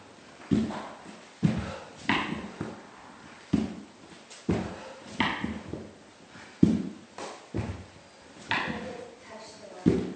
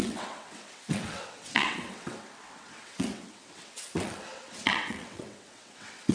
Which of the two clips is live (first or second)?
first